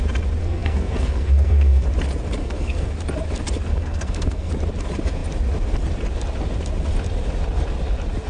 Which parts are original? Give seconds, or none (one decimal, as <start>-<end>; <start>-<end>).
0.0-0.4; 1.9-2.4; 2.9-3.7; 4.5-8.3